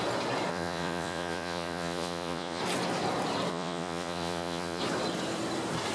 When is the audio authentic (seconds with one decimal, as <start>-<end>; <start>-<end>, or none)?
0.0-0.5; 2.6-3.5; 4.8-5.9